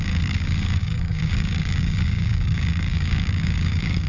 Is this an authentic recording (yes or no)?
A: no